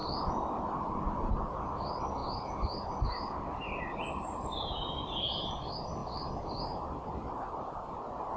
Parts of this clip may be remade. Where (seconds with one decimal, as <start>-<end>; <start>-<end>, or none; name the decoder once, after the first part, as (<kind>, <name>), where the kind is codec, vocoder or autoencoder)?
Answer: none